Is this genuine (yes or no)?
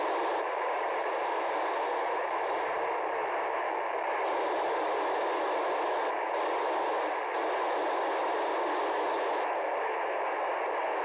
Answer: yes